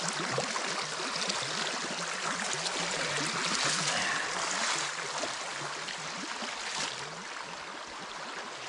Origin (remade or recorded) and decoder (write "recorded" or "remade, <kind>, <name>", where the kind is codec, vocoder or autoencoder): recorded